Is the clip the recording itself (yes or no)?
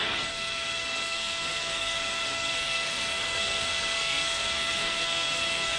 no